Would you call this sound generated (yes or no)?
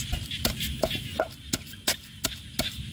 no